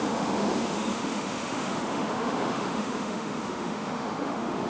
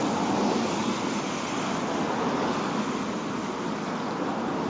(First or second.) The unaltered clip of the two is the second